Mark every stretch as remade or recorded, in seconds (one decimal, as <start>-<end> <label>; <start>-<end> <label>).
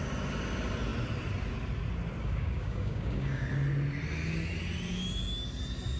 0.0-2.2 recorded; 2.2-3.5 remade; 3.5-6.0 recorded